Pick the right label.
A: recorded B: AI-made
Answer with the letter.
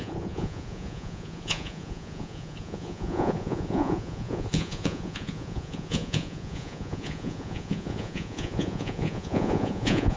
B